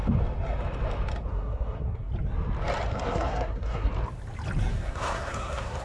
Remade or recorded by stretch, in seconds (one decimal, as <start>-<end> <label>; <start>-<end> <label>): 0.0-1.3 recorded; 1.3-2.1 remade; 2.1-2.9 recorded; 2.9-3.9 remade; 3.9-4.7 recorded; 4.7-5.8 remade